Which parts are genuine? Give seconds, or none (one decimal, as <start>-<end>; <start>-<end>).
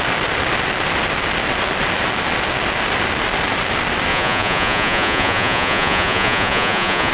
0.0-4.1